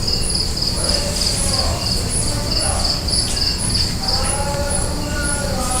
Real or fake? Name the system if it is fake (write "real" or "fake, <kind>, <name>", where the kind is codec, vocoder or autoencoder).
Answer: real